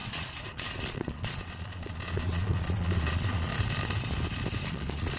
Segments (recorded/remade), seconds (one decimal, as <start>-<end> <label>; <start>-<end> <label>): 0.0-3.5 remade; 3.5-4.7 recorded; 4.7-5.2 remade